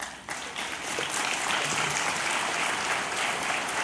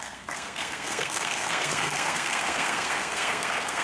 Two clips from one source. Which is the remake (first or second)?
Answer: second